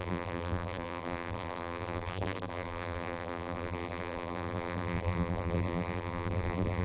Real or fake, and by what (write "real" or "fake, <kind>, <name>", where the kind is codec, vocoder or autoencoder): fake, vocoder, BigVGAN v2